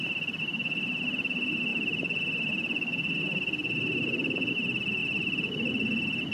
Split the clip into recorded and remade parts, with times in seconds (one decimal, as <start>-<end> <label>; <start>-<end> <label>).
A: 0.0-6.3 recorded